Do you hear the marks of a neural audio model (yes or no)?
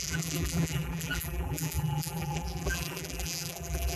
yes